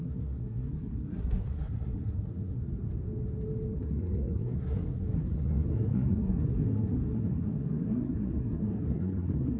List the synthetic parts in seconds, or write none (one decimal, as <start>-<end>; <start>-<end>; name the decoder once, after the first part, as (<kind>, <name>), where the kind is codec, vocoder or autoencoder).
0.0-2.6 (codec, SNAC); 3.8-9.6